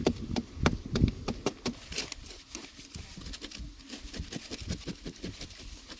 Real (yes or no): yes